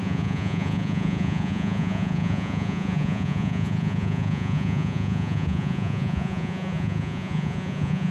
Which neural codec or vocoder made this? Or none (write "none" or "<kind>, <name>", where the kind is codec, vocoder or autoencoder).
vocoder, Vocos